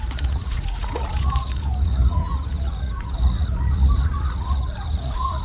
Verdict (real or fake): fake